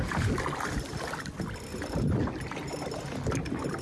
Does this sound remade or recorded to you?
recorded